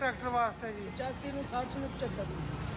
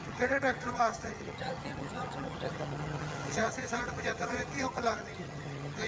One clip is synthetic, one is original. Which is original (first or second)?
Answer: first